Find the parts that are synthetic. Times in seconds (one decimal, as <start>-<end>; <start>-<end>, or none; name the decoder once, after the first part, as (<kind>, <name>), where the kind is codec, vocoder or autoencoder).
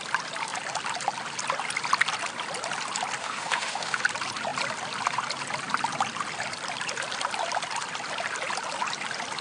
3.2-4.0 (autoencoder, DAC-VAE)